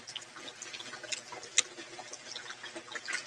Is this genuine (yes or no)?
yes